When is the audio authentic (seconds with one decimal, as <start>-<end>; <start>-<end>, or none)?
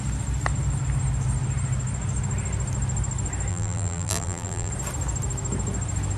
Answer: 0.0-3.5; 4.7-6.2